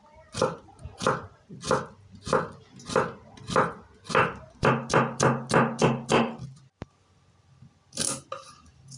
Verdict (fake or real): real